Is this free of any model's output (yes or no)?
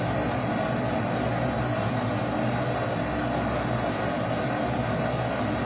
yes